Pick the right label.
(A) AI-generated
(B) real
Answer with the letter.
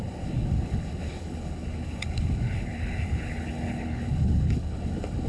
A